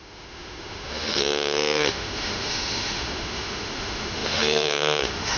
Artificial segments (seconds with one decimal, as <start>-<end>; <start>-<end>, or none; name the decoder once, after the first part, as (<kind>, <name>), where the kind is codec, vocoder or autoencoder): 0.0-5.4 (autoencoder, DAC-VAE)